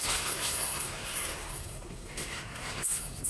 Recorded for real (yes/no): no